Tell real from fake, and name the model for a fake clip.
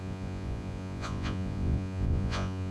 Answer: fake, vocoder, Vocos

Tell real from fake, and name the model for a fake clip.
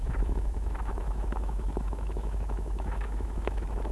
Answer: fake, autoencoder, DAC-VAE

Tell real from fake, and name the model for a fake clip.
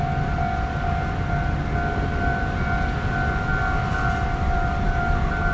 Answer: real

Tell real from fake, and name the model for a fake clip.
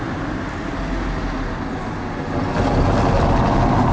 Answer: real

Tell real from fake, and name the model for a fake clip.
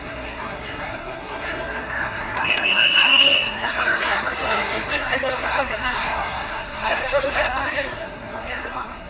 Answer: fake, codec, SNAC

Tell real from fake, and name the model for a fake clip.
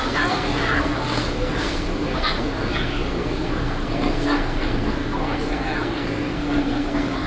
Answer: fake, codec, SNAC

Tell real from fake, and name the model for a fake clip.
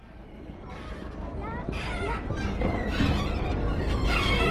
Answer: real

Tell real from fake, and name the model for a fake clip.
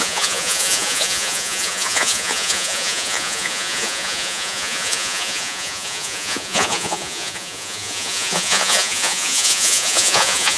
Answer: fake, vocoder, Vocos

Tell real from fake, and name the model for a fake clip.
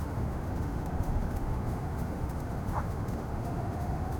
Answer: fake, autoencoder, DAC-VAE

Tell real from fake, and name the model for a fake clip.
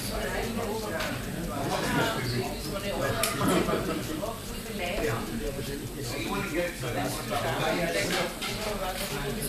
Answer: fake, vocoder, BigVGAN v2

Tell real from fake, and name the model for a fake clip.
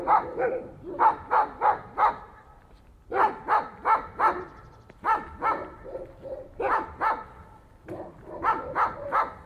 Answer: real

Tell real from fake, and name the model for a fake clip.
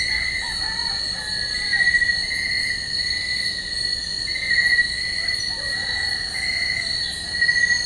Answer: real